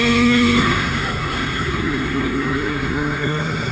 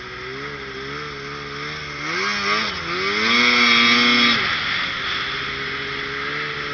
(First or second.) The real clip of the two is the second